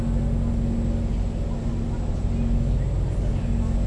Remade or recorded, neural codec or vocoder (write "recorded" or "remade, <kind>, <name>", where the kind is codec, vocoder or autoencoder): recorded